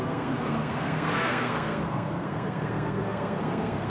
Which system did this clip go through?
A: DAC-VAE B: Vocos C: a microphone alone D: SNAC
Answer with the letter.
D